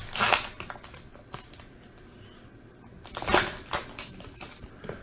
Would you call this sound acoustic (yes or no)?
yes